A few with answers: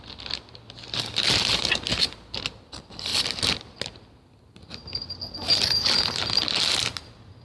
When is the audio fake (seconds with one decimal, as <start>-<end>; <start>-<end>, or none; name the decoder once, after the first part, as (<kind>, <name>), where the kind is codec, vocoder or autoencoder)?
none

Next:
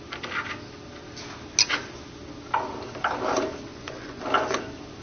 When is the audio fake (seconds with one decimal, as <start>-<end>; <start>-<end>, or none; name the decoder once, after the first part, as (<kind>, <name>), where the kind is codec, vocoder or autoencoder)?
3.7-4.2 (vocoder, Vocos)

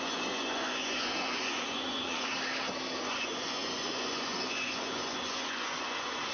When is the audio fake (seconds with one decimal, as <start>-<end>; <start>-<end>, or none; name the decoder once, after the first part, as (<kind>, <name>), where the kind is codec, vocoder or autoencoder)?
0.0-2.3 (vocoder, Vocos); 3.0-6.3

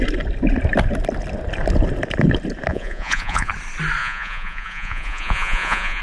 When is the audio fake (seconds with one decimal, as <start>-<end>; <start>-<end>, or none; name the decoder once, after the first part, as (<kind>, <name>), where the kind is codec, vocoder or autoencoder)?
2.7-3.5 (vocoder, Vocos); 4.0-6.0

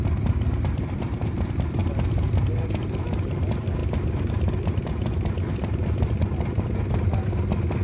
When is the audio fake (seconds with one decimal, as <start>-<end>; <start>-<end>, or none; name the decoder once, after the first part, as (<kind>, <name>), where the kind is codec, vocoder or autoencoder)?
none

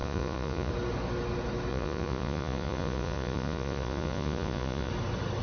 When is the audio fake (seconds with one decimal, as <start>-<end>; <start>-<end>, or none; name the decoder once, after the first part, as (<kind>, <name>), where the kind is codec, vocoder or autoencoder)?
0.0-0.7 (vocoder, Vocos); 1.7-4.9

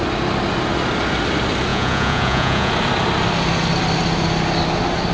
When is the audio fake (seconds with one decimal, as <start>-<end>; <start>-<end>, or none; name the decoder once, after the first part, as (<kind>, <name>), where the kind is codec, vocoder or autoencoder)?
1.7-2.7 (vocoder, Vocos)

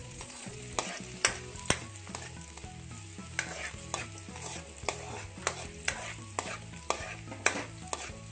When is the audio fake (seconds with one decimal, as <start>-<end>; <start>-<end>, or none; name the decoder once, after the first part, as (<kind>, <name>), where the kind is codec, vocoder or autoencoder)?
0.0-0.6 (vocoder, Vocos)